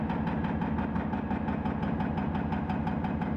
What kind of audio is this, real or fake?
real